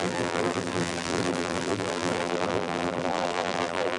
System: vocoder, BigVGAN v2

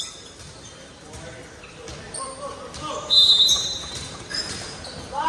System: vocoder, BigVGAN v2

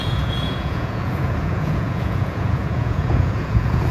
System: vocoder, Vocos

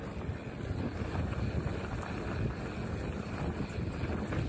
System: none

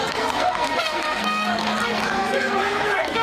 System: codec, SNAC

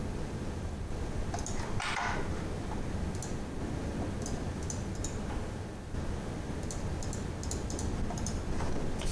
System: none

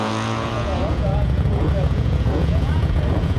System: vocoder, Vocos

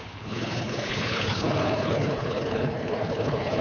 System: codec, HILCodec